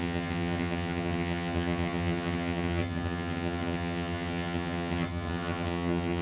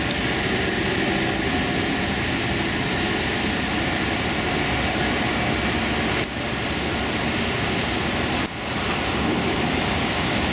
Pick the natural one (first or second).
second